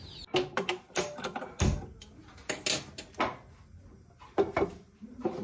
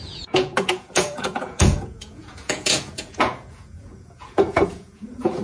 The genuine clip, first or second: first